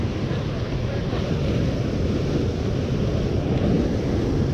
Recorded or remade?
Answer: recorded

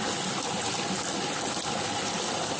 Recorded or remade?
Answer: recorded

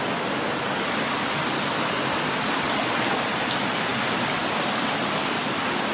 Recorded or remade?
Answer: recorded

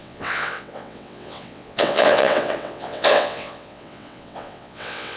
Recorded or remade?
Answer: remade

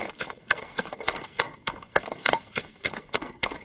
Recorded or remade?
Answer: remade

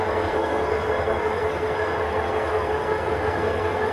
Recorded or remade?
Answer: remade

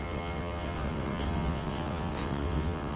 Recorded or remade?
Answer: remade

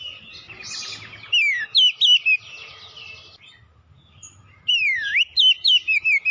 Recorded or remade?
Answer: recorded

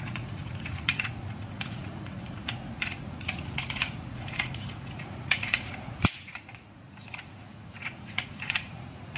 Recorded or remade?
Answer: remade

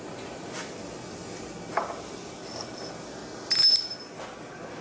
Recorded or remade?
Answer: recorded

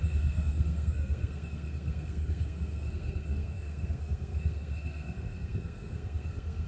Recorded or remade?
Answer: remade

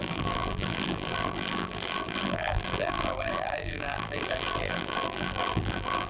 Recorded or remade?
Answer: remade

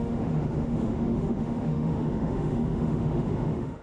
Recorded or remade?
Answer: remade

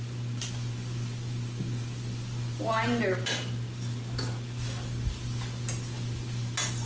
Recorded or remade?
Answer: recorded